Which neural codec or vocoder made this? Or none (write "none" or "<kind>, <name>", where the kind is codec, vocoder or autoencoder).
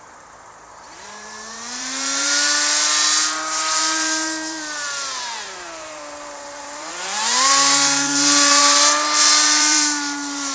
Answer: vocoder, BigVGAN v2